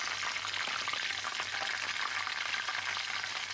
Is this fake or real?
real